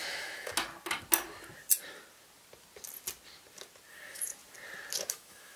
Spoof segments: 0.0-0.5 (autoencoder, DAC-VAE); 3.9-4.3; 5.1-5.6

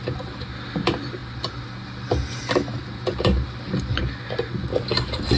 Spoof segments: none

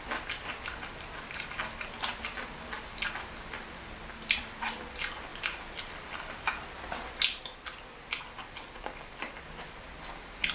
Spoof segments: none